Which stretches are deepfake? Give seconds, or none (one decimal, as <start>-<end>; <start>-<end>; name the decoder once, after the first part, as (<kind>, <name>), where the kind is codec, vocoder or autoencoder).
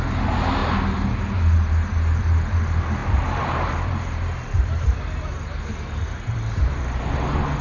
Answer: 3.0-7.0 (vocoder, BigVGAN v2)